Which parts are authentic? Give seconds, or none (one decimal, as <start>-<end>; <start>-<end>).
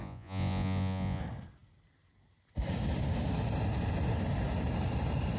1.2-5.4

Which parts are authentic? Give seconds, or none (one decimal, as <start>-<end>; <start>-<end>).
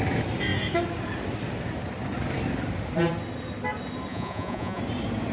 0.0-4.1; 4.8-5.3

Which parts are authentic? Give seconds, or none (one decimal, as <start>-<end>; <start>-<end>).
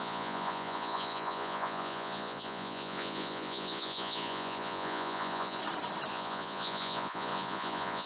5.6-6.1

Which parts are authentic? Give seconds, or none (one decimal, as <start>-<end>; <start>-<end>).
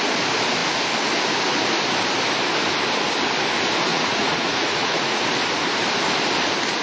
0.0-3.9; 5.2-6.8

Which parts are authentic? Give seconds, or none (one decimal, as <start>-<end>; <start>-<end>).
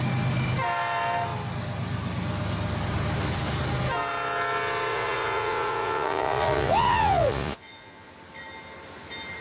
0.0-4.9; 8.1-9.4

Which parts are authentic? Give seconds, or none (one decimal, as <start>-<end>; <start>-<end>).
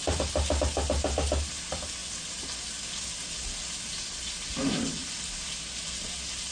0.0-6.5